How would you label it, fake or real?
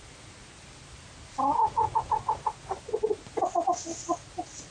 real